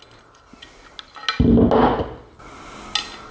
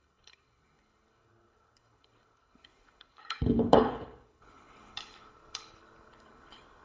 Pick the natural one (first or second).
first